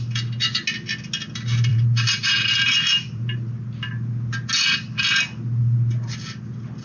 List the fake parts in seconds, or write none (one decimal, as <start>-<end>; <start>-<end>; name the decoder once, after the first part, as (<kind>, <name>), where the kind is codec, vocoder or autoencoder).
1.7-3.5 (vocoder, BigVGAN v2)